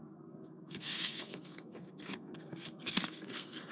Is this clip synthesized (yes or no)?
yes